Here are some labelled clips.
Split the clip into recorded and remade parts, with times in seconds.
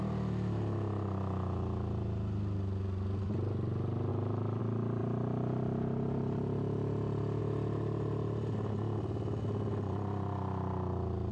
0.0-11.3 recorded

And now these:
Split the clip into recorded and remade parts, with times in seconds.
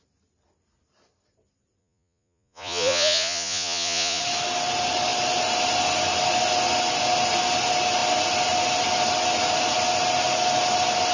0.0-1.8 recorded; 1.8-4.2 remade; 4.2-11.1 recorded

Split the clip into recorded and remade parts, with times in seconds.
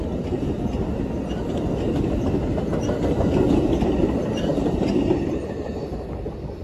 0.0-6.6 recorded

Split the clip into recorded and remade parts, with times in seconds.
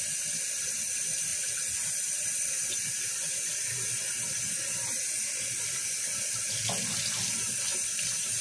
0.0-8.4 recorded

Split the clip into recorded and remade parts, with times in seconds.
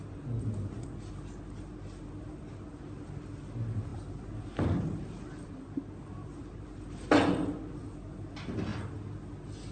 0.0-9.7 recorded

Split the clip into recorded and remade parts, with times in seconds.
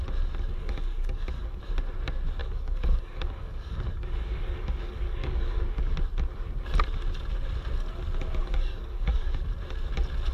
0.0-0.6 recorded; 0.6-1.6 remade; 1.6-2.4 recorded; 2.4-5.9 remade; 5.9-8.4 recorded; 8.4-9.4 remade; 9.4-10.3 recorded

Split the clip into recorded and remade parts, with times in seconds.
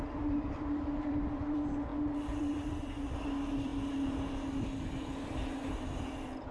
0.0-1.9 remade; 1.9-2.4 recorded; 2.4-3.7 remade; 3.7-4.8 recorded; 4.8-6.5 remade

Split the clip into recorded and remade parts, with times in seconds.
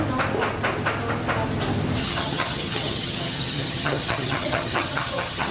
0.0-2.0 recorded; 2.0-5.5 remade